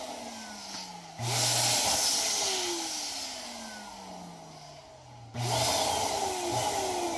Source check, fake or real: real